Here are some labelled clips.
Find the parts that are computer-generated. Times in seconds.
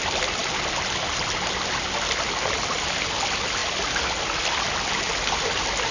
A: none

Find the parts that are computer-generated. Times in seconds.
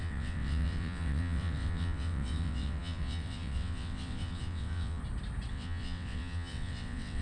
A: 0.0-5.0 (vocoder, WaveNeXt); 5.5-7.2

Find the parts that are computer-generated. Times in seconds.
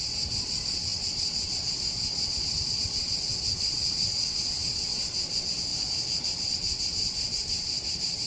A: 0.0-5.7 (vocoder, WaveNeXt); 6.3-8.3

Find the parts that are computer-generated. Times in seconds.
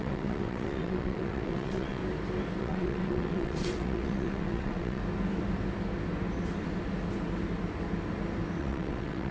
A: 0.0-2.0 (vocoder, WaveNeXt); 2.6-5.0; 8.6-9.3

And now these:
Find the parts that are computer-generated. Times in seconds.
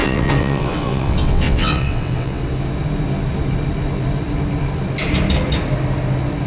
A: 0.0-2.4 (vocoder, WaveNeXt)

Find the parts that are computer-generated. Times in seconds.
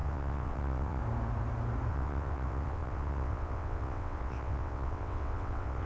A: 0.0-1.0 (vocoder, WaveNeXt); 1.9-5.9